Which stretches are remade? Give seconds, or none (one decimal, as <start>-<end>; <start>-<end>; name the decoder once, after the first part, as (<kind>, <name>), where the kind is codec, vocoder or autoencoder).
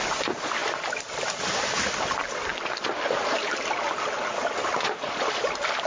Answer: none